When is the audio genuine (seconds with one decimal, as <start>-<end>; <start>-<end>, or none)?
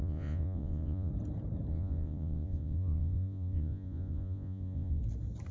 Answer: 1.1-1.7; 5.0-5.5